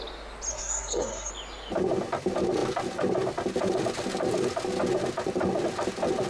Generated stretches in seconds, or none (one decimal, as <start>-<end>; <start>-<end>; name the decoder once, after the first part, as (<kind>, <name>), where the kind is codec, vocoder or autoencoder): 0.5-1.3 (codec, SNAC)